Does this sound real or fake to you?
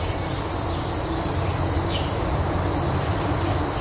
real